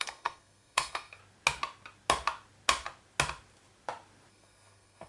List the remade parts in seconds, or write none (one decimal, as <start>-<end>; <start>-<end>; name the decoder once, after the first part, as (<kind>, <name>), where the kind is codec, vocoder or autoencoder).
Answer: 0.0-1.2 (codec, SNAC); 4.3-5.1